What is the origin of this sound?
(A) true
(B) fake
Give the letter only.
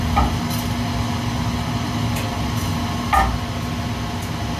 A